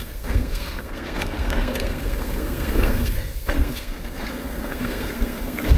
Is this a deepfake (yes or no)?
yes